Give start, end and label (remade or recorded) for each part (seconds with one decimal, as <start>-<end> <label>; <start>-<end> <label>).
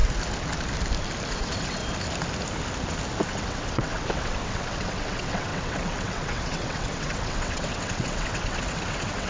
0.0-1.3 recorded; 1.3-1.8 remade; 1.8-3.3 recorded; 3.3-9.3 remade